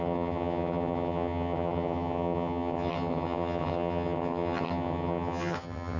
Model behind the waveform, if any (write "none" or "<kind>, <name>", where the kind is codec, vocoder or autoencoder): vocoder, HiFi-GAN